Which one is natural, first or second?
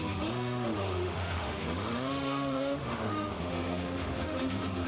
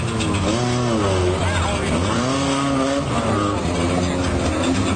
second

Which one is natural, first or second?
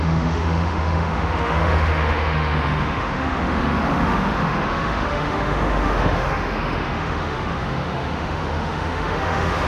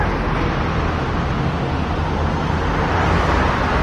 second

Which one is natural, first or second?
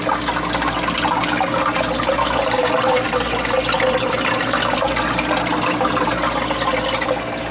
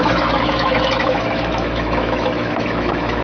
first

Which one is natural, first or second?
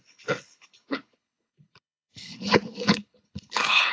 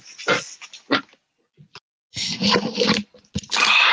second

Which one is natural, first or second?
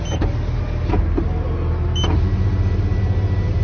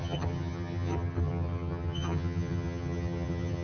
first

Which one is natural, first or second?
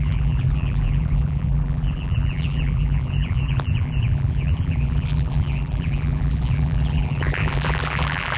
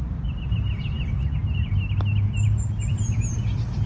second